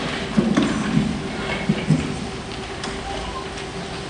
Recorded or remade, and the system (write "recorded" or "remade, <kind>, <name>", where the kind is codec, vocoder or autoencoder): recorded